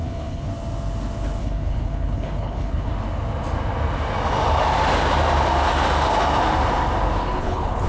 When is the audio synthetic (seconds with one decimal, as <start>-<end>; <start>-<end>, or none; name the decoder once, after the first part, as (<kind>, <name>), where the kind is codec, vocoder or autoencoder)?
0.0-0.5 (codec, HILCodec); 1.4-2.9; 7.4-7.9